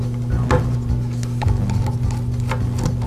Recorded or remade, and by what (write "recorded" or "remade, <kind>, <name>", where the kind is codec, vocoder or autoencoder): recorded